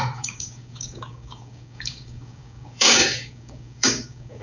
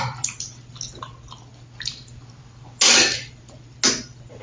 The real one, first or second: second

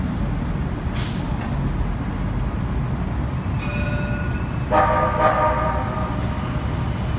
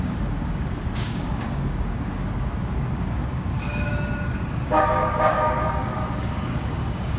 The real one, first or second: first